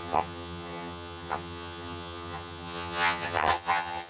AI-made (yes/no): yes